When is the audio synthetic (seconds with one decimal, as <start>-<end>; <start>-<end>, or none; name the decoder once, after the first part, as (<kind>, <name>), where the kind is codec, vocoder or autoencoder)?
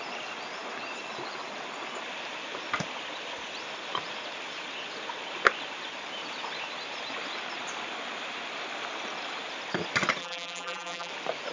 10.2-11.1 (vocoder, BigVGAN v2)